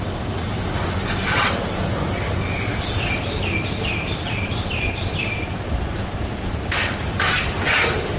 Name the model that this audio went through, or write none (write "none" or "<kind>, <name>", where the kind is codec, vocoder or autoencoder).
vocoder, BigVGAN v2